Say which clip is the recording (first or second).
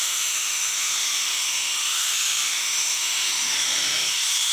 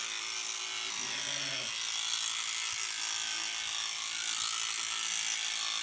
second